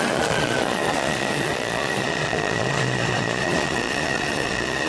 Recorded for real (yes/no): no